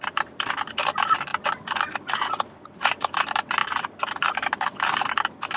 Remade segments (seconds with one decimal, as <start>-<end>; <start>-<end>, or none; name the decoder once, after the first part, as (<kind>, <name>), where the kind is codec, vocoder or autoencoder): 0.0-1.3 (vocoder, BigVGAN v2); 2.3-5.6